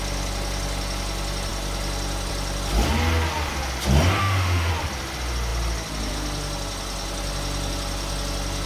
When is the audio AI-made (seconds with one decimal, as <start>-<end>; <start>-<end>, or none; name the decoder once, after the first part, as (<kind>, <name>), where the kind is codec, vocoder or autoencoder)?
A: 4.2-4.7 (autoencoder, DAC-VAE)

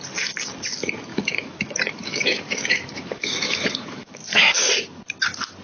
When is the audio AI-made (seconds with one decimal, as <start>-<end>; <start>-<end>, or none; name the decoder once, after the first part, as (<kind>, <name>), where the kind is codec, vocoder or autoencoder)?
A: 1.1-4.5 (autoencoder, DAC-VAE)

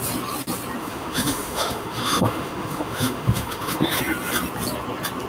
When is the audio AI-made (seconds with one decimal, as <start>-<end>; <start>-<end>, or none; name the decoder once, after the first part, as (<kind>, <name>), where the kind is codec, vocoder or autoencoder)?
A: 0.8-4.0 (autoencoder, DAC-VAE)

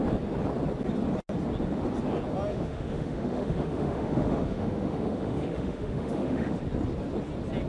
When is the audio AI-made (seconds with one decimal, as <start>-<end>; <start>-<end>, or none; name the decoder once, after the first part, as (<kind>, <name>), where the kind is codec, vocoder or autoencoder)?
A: 2.5-6.6 (autoencoder, DAC-VAE)

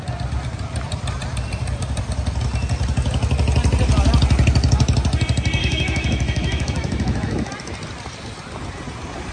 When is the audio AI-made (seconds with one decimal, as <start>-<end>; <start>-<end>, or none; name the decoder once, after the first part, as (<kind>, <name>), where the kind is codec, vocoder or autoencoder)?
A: 5.6-7.5 (autoencoder, DAC-VAE)

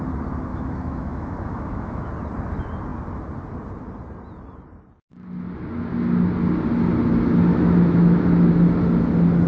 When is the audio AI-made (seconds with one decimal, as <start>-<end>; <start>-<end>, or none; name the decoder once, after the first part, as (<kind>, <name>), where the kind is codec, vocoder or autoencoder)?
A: 0.5-2.1 (autoencoder, DAC-VAE); 7.5-8.5

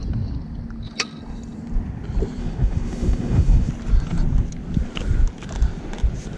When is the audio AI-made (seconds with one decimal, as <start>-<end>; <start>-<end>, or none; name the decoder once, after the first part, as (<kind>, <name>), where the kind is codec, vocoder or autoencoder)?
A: 2.4-3.7 (autoencoder, DAC-VAE)